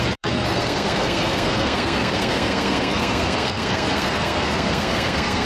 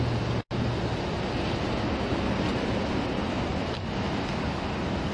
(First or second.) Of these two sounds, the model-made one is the first